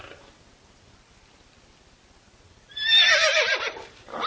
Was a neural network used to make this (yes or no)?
no